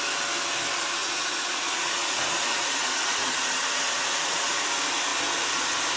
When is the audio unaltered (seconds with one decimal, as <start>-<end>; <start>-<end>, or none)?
0.0-1.0; 4.6-6.0